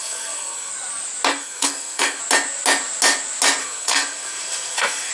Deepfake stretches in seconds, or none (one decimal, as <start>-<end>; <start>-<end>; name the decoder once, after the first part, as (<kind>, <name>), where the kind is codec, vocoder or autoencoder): 0.0-0.7 (codec, SNAC); 1.3-2.2; 3.6-5.1